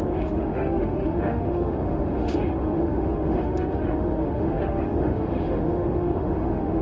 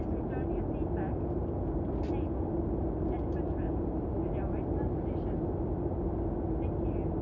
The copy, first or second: first